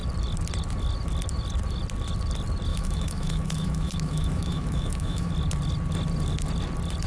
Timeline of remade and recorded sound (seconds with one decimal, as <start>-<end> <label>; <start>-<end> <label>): 0.0-2.7 recorded; 2.7-5.3 remade; 5.3-7.1 recorded